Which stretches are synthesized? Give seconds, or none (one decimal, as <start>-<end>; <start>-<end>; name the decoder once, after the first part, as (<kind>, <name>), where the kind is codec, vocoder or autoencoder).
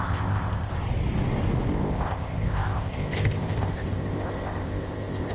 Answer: 0.0-0.7 (codec, ZipCodec); 1.7-5.3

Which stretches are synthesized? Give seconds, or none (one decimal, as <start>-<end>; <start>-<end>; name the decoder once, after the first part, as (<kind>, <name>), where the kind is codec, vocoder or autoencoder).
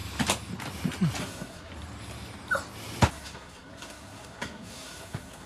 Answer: 1.2-1.7 (codec, SNAC); 3.1-5.5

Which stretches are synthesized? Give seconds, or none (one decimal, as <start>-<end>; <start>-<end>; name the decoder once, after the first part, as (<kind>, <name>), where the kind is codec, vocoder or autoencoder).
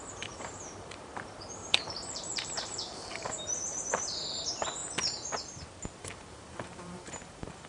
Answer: 0.0-4.8 (vocoder, BigVGAN v2); 6.0-7.7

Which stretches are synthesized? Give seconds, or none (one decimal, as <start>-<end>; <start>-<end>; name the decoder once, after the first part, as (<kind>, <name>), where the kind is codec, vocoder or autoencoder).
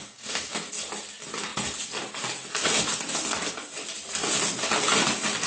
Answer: 0.0-0.6 (codec, DAC)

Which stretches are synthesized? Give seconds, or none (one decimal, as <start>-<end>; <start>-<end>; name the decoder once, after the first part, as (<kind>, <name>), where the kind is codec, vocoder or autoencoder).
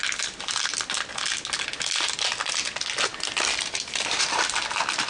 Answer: 3.1-4.4 (vocoder, BigVGAN v2)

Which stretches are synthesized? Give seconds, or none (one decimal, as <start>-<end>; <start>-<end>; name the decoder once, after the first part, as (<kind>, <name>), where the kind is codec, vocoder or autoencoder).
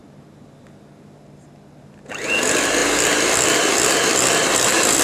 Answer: none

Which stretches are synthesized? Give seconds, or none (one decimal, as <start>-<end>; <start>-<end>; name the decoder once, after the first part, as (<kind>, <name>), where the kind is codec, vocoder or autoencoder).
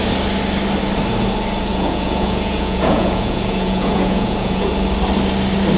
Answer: 1.7-4.7 (vocoder, Vocos)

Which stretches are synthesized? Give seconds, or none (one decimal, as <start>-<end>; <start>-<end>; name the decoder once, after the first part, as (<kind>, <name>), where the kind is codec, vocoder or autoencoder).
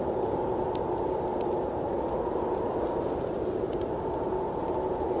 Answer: none